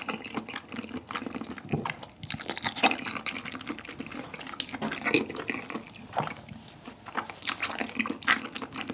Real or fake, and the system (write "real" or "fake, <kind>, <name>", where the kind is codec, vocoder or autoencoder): real